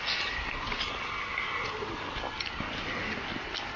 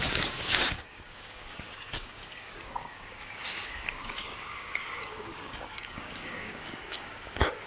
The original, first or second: first